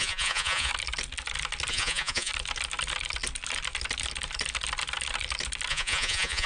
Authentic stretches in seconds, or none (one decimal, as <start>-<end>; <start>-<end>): 0.7-1.7; 2.3-5.7